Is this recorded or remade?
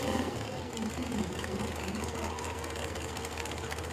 remade